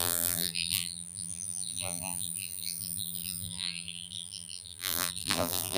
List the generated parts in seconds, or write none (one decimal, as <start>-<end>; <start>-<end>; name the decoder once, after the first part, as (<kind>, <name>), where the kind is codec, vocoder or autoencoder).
0.0-5.8 (vocoder, BigVGAN v2)